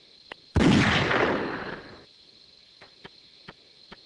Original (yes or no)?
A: yes